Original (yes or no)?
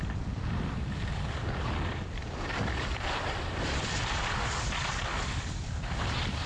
no